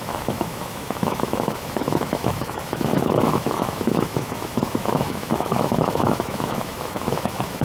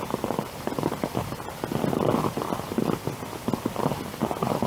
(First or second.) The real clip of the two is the second